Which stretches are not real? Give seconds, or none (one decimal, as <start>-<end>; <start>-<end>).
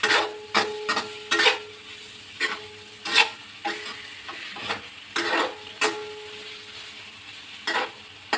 none